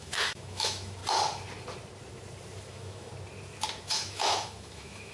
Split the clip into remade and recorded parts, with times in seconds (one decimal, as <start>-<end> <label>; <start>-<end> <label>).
0.0-1.0 remade; 1.0-2.7 recorded; 2.7-3.1 remade; 3.1-3.8 recorded; 3.8-5.1 remade